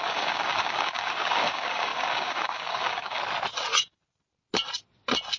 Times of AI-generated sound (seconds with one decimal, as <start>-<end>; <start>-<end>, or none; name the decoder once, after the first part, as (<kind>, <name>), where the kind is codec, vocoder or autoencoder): 0.0-3.2 (codec, DAC)